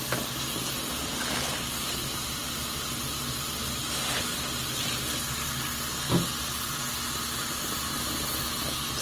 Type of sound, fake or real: real